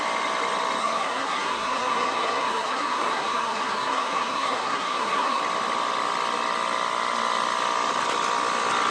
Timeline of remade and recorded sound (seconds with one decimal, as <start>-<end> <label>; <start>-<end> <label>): 0.0-0.8 recorded; 0.8-5.4 remade; 5.4-8.9 recorded